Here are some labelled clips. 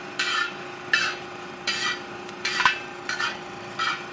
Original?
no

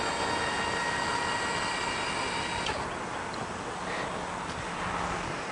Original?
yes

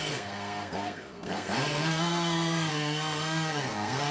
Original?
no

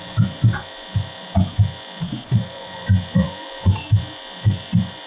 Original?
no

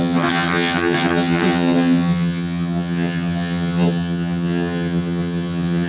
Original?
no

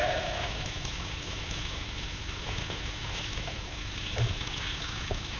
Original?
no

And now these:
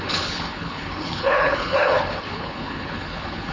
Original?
no